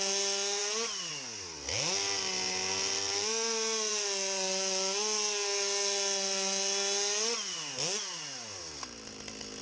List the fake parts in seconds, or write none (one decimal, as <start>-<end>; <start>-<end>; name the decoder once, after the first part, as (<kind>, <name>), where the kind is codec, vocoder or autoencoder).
none